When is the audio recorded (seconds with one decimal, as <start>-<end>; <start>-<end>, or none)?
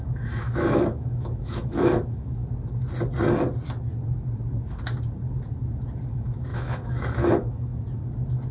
2.4-6.1; 7.7-8.5